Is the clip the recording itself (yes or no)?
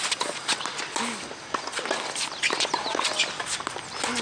yes